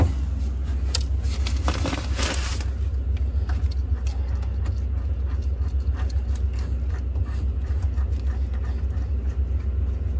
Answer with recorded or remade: recorded